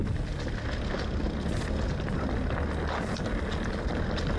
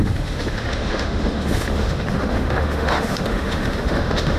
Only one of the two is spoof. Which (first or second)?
second